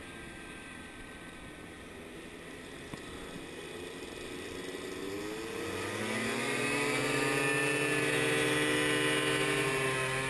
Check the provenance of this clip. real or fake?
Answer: real